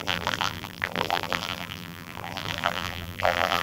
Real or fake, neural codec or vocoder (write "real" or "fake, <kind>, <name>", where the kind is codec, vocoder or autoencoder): fake, vocoder, BigVGAN v2